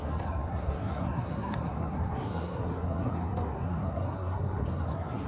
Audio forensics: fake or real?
fake